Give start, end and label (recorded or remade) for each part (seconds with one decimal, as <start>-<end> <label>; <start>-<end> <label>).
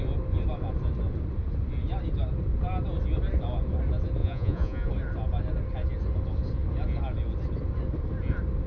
0.0-4.2 recorded; 4.2-4.9 remade; 4.9-8.7 recorded